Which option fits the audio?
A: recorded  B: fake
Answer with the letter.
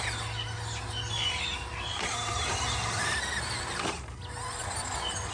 A